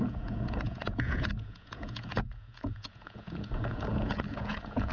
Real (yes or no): no